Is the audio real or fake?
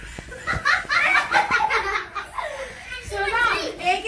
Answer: fake